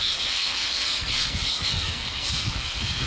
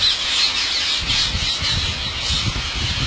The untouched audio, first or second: second